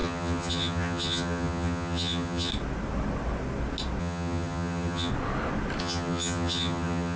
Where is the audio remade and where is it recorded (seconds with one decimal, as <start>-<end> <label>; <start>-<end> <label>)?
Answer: 0.0-2.5 remade; 2.5-4.0 recorded; 4.0-5.1 remade; 5.1-5.8 recorded; 5.8-7.2 remade